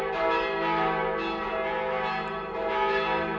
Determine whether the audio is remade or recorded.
recorded